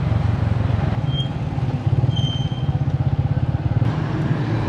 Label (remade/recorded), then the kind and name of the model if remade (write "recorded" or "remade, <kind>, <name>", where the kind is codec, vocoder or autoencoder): recorded